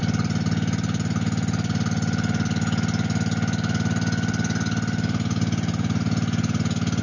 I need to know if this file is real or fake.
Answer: real